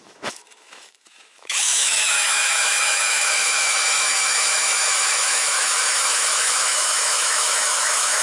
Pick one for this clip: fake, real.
fake